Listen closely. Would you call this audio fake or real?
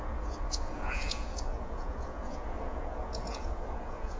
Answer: fake